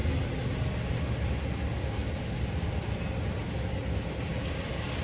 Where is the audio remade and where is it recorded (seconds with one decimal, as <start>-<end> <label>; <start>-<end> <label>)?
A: 0.0-5.0 recorded